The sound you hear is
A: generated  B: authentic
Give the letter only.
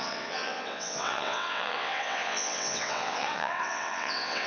A